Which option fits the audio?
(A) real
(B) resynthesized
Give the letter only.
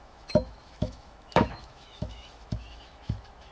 B